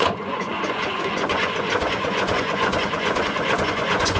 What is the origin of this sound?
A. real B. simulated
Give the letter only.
B